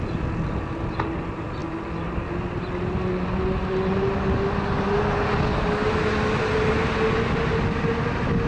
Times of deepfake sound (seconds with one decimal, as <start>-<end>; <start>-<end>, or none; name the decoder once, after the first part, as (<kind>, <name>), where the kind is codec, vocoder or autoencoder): none